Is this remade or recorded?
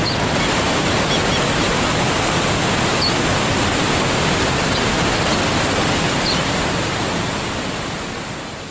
recorded